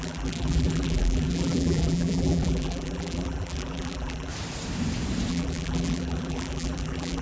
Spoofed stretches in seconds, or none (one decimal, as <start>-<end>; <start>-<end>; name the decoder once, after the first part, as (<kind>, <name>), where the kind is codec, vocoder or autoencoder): 0.0-4.3 (vocoder, BigVGAN v2); 5.3-7.2